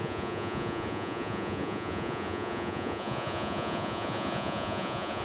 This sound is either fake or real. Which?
fake